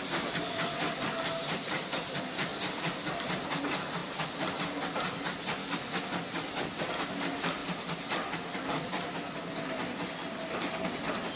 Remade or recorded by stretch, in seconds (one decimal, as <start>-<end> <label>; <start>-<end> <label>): 0.0-5.6 recorded; 5.6-6.1 remade; 6.1-11.4 recorded